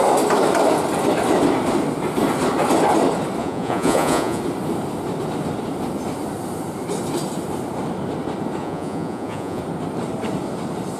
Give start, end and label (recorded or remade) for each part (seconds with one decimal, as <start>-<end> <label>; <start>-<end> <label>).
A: 0.0-3.4 recorded; 3.4-4.4 remade; 4.4-8.6 recorded; 8.6-9.6 remade; 9.6-11.0 recorded